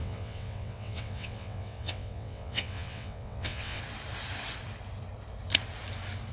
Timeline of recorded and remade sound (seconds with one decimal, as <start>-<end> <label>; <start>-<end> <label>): 0.0-3.8 remade; 3.8-6.3 recorded